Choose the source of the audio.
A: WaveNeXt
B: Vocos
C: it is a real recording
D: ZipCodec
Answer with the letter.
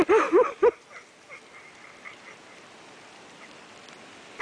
C